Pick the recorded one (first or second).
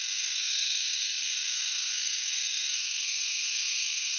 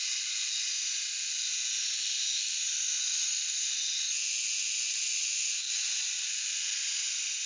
second